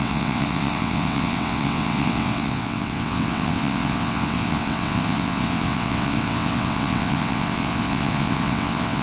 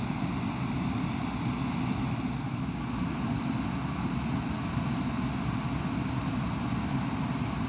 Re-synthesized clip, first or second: first